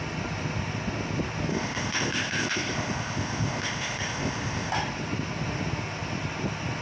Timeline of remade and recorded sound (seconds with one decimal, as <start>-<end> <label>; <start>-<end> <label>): 0.0-1.5 recorded; 1.5-4.7 remade; 4.7-6.8 recorded